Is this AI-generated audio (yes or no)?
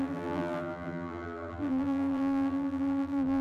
yes